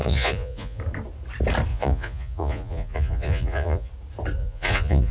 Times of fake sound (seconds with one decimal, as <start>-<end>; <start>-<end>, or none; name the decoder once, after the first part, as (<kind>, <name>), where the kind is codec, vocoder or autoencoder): 0.0-0.8 (vocoder, Vocos); 1.7-3.9; 4.4-5.1